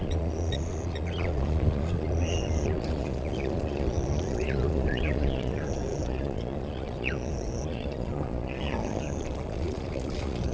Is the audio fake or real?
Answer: fake